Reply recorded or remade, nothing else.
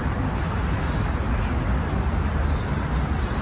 recorded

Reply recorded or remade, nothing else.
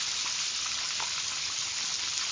recorded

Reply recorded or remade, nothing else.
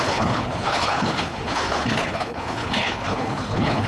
remade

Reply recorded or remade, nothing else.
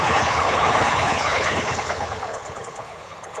remade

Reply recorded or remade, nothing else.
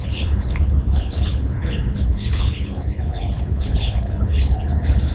remade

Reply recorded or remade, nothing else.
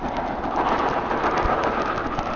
recorded